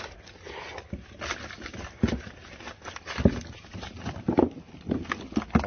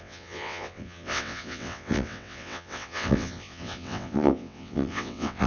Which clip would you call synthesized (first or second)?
second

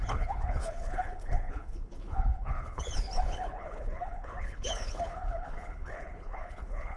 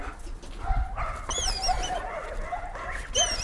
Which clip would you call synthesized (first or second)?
first